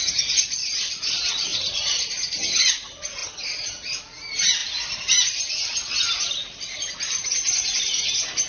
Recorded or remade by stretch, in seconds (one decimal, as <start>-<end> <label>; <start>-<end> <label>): 0.0-0.6 recorded; 0.6-1.1 remade; 1.1-1.5 recorded; 1.5-2.3 remade; 2.3-4.6 recorded; 4.6-5.5 remade; 5.5-8.5 recorded